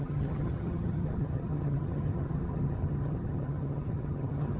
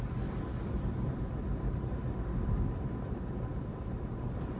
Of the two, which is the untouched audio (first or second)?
second